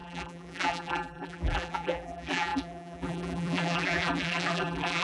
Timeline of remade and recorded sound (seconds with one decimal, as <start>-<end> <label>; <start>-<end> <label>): 0.0-5.0 remade